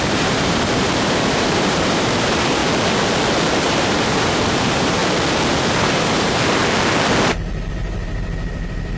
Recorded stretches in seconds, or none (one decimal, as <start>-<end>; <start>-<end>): 2.6-3.5; 5.0-5.8; 6.6-7.7